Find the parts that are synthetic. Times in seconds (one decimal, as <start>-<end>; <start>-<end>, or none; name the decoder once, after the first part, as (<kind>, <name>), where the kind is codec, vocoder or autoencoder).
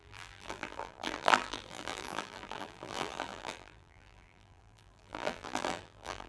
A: 0.0-6.3 (vocoder, BigVGAN v2)